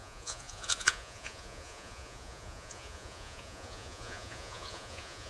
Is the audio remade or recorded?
remade